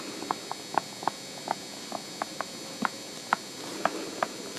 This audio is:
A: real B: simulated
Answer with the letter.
A